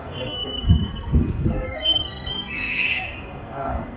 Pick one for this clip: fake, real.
fake